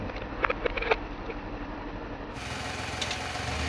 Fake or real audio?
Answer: fake